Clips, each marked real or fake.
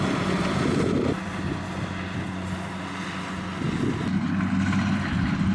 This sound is real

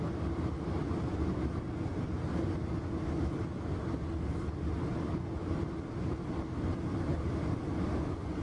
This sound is real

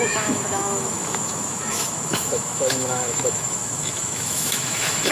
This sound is fake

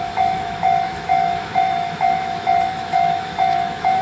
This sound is fake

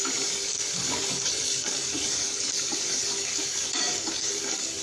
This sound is fake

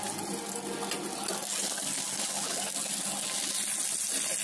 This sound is real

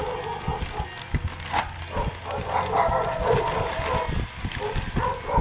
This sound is real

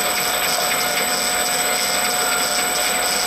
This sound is real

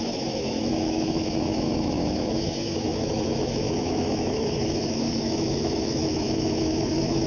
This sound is fake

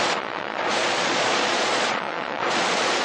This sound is fake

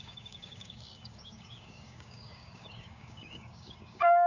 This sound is fake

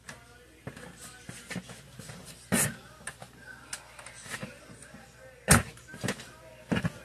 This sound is real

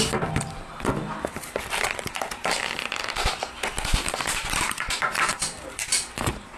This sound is fake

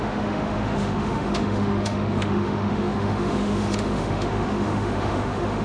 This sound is fake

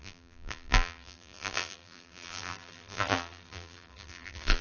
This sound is fake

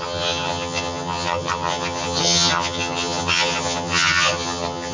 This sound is fake